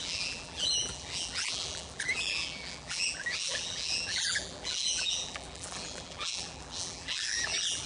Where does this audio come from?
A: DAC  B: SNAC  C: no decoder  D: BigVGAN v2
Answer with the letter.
D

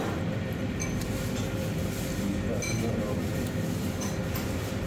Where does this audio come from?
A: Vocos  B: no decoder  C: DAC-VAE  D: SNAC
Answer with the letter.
B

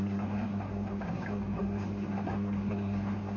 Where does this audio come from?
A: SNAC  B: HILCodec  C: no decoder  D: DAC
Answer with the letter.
A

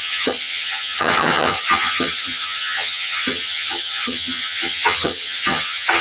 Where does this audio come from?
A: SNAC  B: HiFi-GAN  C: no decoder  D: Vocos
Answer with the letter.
B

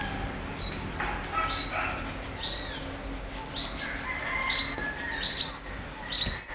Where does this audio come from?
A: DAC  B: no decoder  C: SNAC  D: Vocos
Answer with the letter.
B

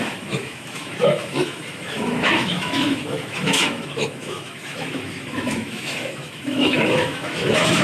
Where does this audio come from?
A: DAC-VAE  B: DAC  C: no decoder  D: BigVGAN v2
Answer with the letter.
A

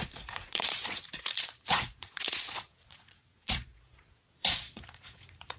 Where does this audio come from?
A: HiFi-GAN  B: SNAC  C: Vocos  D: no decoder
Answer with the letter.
C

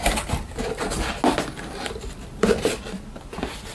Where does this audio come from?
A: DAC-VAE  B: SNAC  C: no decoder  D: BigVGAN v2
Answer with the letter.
C